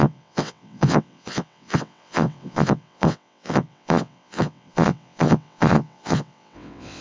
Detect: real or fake fake